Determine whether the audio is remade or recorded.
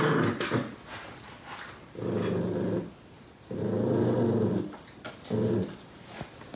recorded